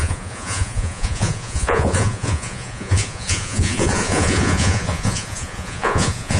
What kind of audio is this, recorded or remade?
remade